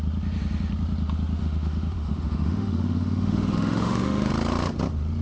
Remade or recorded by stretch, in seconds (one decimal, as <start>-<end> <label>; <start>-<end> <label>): 0.0-1.4 recorded; 1.4-4.3 remade; 4.3-5.2 recorded